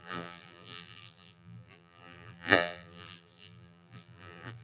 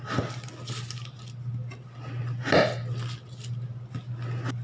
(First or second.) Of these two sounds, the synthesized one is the first